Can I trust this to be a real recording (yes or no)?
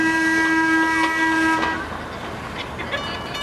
yes